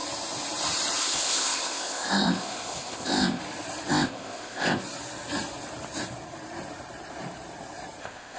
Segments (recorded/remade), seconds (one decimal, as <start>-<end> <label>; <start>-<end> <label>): 0.0-1.0 recorded; 1.0-3.4 remade; 3.4-3.9 recorded; 3.9-4.8 remade; 4.8-8.0 recorded; 8.0-8.4 remade